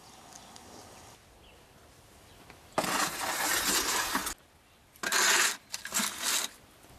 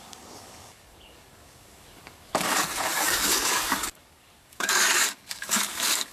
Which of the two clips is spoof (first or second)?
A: second